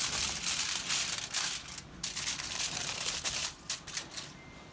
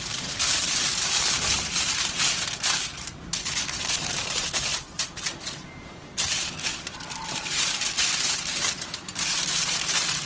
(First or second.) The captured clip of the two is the first